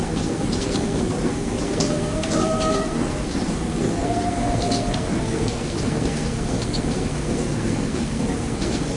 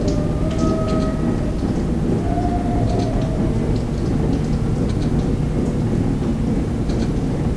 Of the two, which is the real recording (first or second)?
second